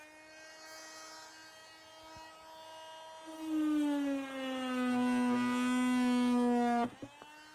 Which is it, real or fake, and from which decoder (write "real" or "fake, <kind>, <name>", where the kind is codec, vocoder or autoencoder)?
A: real